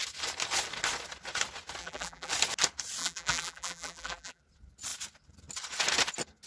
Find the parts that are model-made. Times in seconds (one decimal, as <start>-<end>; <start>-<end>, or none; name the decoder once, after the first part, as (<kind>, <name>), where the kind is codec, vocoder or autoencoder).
1.8-2.3 (vocoder, BigVGAN v2); 3.0-4.4